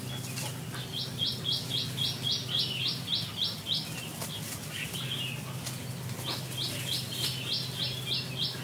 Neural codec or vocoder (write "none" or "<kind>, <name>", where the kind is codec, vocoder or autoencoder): none